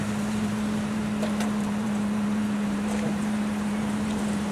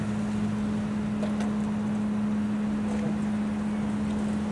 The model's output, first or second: first